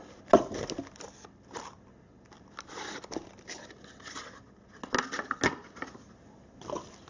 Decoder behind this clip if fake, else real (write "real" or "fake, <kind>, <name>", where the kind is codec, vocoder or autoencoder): real